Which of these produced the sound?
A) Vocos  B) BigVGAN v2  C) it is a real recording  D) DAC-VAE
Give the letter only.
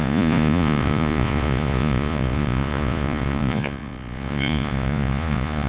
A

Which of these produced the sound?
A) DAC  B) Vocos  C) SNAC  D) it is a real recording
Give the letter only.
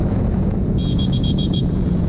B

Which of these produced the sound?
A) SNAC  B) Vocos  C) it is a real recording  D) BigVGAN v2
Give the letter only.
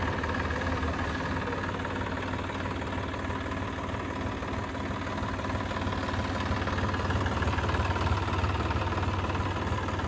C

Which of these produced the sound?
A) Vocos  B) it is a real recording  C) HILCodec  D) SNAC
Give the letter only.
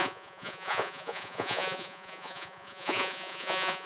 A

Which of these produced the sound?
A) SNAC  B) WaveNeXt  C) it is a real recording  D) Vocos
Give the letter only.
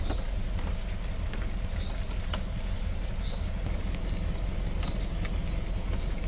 C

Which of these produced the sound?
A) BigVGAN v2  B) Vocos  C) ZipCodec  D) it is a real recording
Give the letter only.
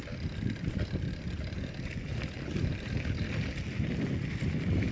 D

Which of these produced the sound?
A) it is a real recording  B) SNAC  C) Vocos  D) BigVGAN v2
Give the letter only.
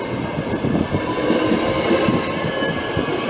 A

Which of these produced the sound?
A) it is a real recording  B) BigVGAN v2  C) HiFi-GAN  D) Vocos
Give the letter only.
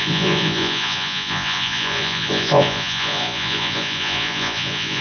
D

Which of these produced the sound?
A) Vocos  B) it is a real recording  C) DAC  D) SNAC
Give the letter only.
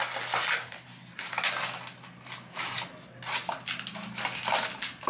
B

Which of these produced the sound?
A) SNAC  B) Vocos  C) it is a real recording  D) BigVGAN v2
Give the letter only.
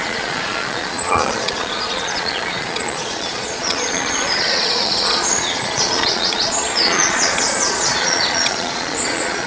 B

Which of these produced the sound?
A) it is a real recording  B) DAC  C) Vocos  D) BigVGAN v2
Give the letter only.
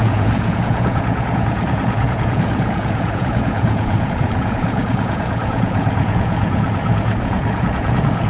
C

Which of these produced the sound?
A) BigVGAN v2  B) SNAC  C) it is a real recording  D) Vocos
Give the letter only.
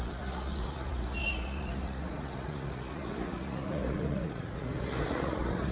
D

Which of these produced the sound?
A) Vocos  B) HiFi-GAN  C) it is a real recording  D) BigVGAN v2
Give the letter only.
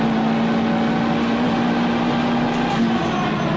C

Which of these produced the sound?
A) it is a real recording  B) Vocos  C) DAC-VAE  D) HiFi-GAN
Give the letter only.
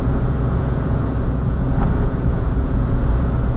B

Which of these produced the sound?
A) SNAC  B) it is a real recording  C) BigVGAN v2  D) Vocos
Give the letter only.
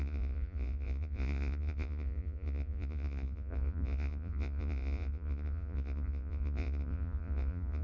D